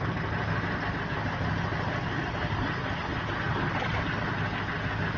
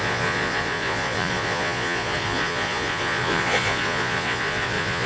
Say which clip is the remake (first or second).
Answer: second